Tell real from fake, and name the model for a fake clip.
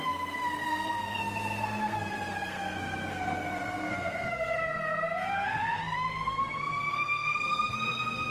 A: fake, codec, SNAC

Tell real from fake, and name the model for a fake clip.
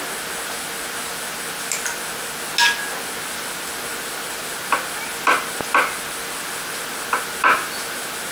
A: real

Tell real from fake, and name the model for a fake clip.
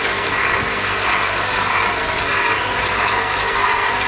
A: fake, codec, SNAC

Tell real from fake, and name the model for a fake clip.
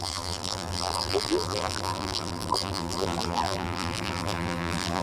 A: fake, vocoder, BigVGAN v2